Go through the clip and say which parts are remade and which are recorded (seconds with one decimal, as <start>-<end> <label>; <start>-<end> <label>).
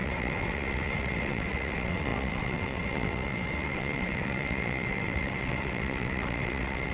0.0-6.9 remade